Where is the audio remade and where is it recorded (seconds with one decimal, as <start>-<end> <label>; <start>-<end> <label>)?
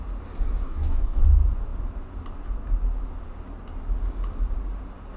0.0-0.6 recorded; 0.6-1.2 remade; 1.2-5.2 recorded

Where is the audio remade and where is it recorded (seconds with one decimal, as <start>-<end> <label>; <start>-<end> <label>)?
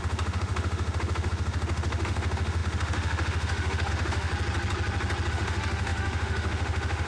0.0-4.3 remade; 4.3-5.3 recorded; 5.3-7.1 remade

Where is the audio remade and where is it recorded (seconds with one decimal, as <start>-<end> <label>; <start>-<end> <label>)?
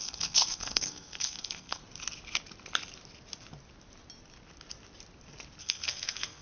0.0-1.8 remade; 1.8-5.6 recorded; 5.6-6.4 remade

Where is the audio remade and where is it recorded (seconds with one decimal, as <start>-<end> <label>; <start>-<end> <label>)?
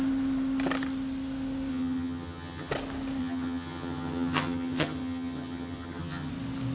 0.0-1.7 recorded; 1.7-2.7 remade; 2.7-3.2 recorded; 3.2-6.3 remade; 6.3-6.7 recorded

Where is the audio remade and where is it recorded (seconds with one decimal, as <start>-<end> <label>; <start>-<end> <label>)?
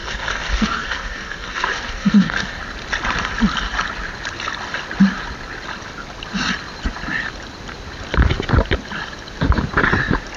0.0-2.6 remade; 2.6-10.4 recorded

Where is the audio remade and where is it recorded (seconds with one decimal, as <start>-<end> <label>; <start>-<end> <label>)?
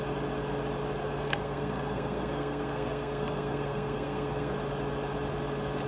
0.0-1.0 recorded; 1.0-4.5 remade; 4.5-5.9 recorded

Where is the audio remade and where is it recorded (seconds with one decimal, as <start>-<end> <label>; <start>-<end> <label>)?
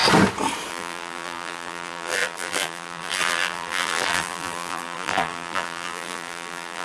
0.0-0.7 recorded; 0.7-6.8 remade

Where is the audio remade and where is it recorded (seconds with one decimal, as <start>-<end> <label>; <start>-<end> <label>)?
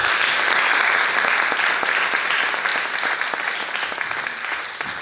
0.0-5.0 recorded